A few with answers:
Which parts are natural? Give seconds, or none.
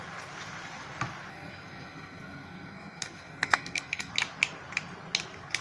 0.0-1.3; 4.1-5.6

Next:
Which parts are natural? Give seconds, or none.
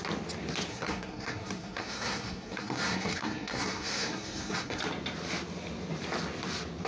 0.0-0.7; 4.8-6.9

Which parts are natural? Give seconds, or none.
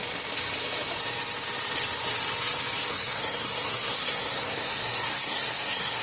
0.0-2.9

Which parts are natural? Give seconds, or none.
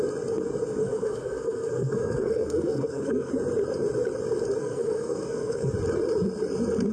0.0-0.8; 3.3-4.6; 5.7-6.9